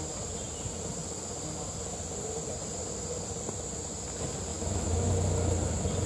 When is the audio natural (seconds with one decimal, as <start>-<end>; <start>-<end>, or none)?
0.0-4.5; 5.1-6.1